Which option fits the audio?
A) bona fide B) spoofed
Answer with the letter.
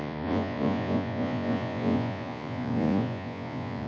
B